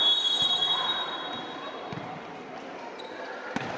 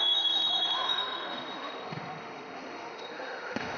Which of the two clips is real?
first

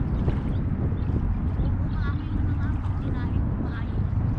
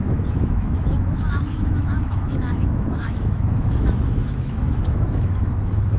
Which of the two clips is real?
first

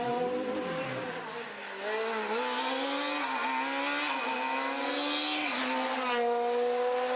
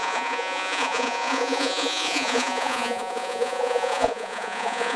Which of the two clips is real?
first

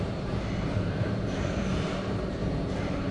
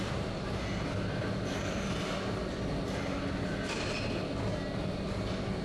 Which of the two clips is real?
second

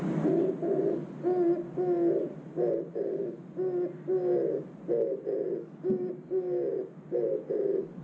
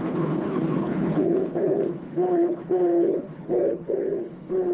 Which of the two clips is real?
first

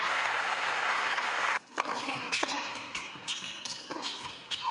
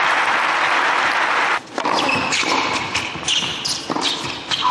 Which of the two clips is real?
second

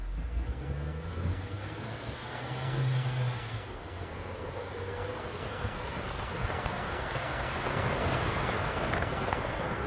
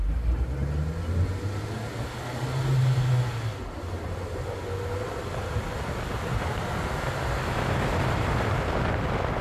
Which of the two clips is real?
second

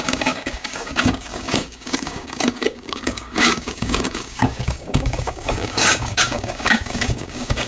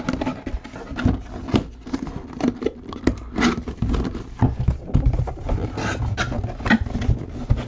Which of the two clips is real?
second